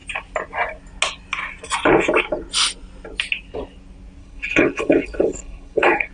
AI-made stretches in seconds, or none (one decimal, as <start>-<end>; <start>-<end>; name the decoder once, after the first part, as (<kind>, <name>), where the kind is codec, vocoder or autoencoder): 4.2-6.1 (codec, HILCodec)